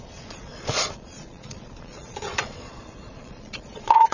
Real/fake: fake